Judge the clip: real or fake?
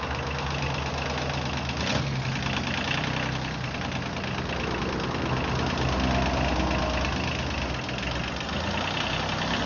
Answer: real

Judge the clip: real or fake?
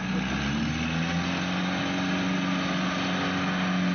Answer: real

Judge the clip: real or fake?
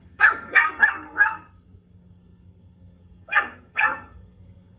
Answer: fake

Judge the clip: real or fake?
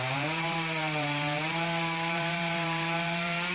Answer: fake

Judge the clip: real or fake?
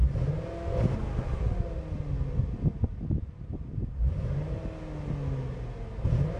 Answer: real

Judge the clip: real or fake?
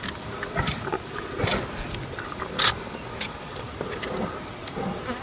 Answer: real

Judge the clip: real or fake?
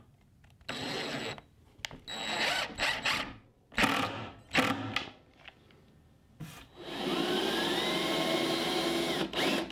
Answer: real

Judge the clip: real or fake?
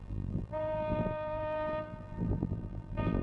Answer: fake